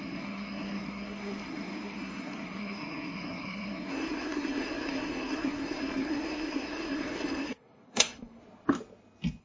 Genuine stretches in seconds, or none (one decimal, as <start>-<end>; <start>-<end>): 8.4-9.4